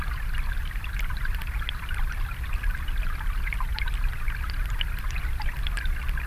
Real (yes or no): yes